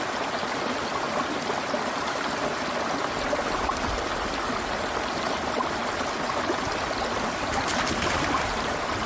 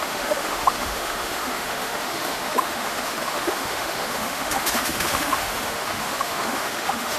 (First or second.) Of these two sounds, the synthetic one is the second